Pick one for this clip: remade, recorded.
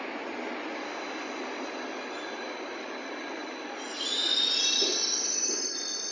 recorded